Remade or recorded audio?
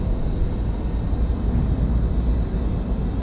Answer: recorded